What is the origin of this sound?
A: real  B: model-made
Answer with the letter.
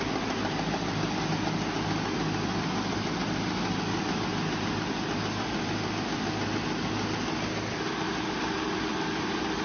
A